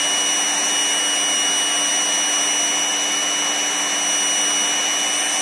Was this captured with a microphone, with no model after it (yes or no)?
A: yes